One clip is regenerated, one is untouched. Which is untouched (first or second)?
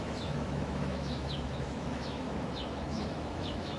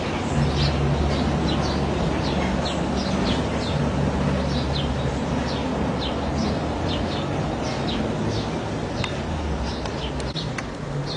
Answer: second